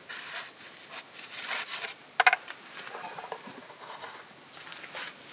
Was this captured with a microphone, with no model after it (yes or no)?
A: yes